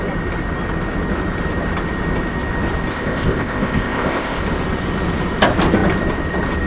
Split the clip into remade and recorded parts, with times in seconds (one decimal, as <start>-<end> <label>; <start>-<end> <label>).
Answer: 0.0-2.9 recorded; 2.9-4.4 remade; 4.4-6.7 recorded